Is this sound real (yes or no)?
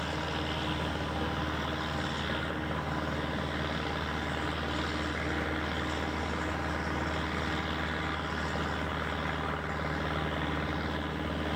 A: yes